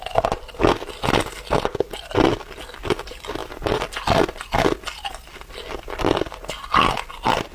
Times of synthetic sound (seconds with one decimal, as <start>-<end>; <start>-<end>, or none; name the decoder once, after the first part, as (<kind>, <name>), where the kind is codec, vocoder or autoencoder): none

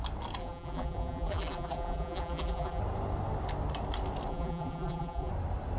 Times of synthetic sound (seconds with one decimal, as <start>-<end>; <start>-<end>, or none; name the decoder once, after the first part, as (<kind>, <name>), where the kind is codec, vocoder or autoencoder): 0.4-2.8 (vocoder, BigVGAN v2); 4.3-5.3

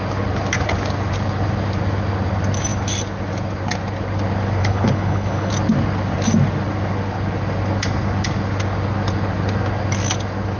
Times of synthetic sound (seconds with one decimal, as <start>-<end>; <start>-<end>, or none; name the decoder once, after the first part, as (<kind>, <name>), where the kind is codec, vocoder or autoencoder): 4.6-5.5 (codec, HILCodec)